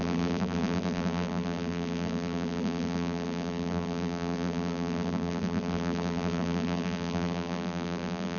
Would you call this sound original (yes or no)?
no